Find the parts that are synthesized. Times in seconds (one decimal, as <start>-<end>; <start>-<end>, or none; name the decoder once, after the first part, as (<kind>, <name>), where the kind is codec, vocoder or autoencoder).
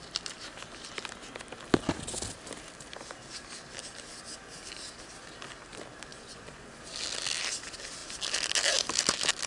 6.1-6.8 (vocoder, Vocos)